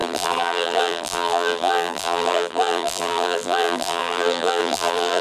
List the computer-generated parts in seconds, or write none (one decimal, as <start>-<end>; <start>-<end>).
0.0-5.2